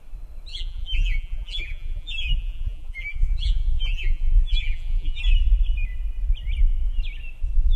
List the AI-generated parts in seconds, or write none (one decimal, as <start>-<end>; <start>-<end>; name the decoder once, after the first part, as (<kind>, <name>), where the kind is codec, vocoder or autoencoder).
0.5-5.2 (vocoder, BigVGAN v2)